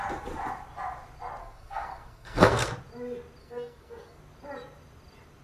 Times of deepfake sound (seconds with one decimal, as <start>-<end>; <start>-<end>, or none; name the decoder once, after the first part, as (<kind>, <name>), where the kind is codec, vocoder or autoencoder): 1.4-2.7 (codec, SNAC); 3.4-4.2